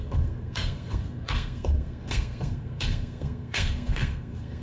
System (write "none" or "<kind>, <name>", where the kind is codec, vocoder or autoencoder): codec, SNAC